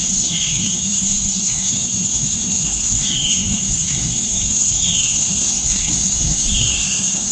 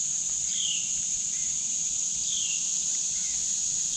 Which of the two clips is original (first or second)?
second